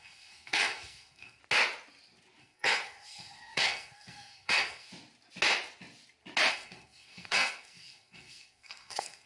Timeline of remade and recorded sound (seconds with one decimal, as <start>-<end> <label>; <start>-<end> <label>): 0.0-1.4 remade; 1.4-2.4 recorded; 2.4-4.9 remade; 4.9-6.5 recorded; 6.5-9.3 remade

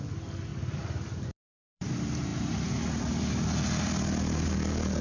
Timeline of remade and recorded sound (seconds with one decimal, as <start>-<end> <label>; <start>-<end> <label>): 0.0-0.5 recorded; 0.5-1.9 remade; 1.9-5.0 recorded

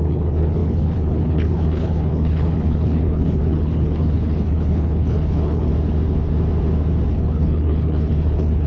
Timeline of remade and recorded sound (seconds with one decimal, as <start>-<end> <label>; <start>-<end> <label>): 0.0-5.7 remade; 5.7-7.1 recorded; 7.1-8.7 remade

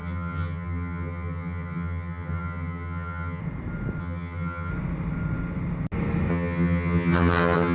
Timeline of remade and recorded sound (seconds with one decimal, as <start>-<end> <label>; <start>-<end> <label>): 0.0-3.4 remade; 3.4-4.0 recorded; 4.0-4.7 remade; 4.7-6.3 recorded; 6.3-7.7 remade

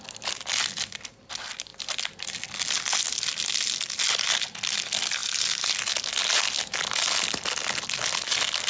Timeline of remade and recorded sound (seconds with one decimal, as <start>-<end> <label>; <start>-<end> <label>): 0.0-8.7 recorded